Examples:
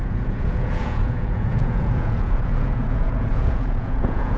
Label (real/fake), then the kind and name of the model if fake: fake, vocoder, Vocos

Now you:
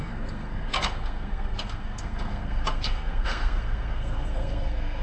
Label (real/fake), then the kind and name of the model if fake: fake, codec, SNAC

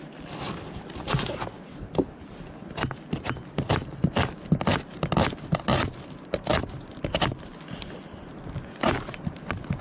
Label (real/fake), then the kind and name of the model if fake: real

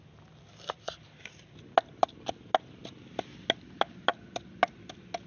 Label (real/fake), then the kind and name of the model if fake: real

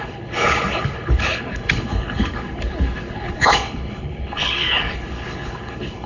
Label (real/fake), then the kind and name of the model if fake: fake, codec, HILCodec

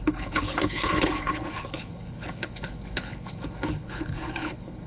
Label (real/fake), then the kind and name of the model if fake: fake, codec, HILCodec